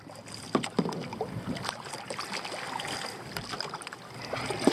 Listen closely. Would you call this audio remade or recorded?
recorded